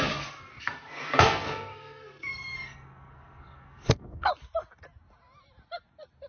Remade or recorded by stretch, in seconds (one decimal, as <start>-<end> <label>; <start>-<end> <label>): 0.0-0.5 recorded; 0.5-4.3 remade; 4.3-6.3 recorded